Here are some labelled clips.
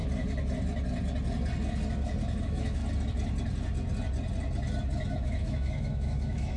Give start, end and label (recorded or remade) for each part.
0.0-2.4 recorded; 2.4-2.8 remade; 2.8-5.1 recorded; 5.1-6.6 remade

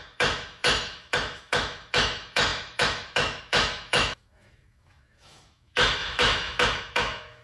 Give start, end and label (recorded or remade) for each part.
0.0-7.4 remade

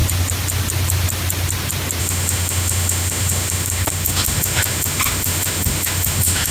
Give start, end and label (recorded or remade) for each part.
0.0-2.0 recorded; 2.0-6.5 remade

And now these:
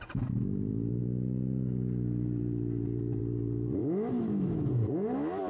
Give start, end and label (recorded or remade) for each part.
0.0-3.8 recorded; 3.8-4.7 remade; 4.7-5.5 recorded

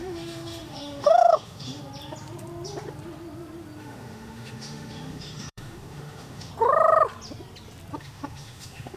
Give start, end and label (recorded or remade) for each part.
0.0-1.8 remade; 1.8-3.8 recorded; 3.8-6.5 remade; 6.5-8.0 recorded; 8.0-9.0 remade